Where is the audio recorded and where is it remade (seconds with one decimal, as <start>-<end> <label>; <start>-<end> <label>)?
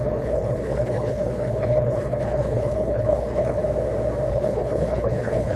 0.0-3.6 remade; 3.6-4.3 recorded; 4.3-5.6 remade